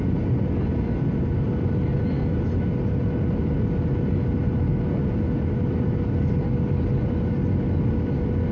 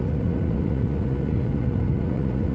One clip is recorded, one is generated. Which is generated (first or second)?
second